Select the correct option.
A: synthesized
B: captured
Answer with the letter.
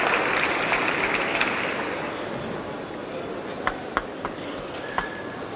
B